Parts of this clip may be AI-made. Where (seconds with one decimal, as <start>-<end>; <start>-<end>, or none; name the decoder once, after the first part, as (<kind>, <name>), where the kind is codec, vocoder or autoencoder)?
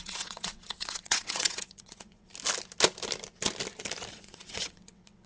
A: 0.0-2.3 (vocoder, WaveNeXt); 4.1-5.3